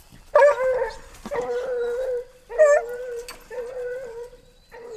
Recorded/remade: recorded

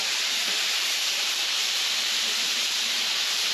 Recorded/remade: remade